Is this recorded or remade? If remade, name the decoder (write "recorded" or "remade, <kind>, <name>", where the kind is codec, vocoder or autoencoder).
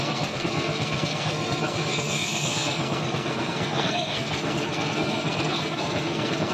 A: remade, codec, SNAC